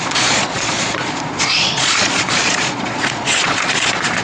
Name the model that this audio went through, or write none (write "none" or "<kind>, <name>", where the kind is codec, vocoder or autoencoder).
vocoder, Vocos